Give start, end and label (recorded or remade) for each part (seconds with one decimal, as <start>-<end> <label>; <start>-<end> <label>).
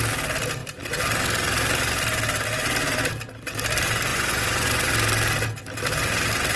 0.0-4.1 recorded; 4.1-4.9 remade; 4.9-6.6 recorded